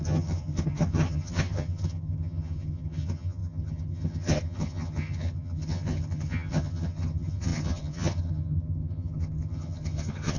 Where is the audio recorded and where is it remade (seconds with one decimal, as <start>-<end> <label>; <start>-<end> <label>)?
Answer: 0.0-10.4 remade